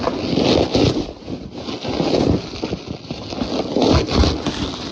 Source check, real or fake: real